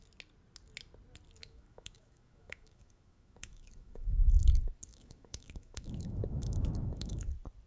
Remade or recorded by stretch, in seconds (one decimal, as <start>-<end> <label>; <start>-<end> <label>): 0.0-1.4 recorded; 1.4-4.3 remade; 4.3-4.9 recorded; 4.9-7.3 remade; 7.3-7.7 recorded